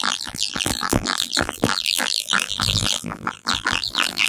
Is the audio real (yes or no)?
no